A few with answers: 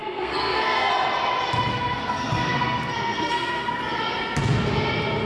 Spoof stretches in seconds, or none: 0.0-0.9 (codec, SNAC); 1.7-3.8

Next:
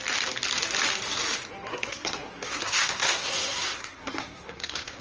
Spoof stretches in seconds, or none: 1.7-5.0 (codec, SNAC)

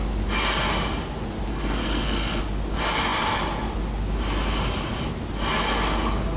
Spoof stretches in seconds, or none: 1.5-2.4 (codec, SNAC)

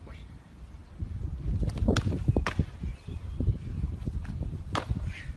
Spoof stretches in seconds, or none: none

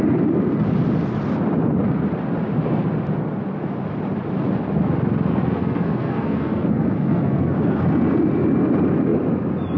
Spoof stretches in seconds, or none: 5.3-7.8 (codec, SNAC)

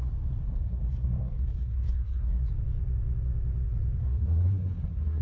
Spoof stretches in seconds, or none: 0.4-2.4 (codec, SNAC); 4.0-5.2